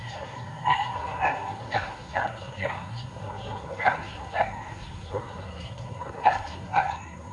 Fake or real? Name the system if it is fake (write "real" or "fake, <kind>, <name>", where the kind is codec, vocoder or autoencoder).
fake, codec, SNAC